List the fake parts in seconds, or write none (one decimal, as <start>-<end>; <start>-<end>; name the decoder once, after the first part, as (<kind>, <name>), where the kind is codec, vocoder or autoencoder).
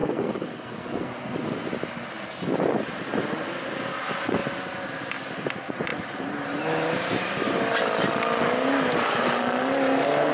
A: 0.0-1.1 (codec, SNAC)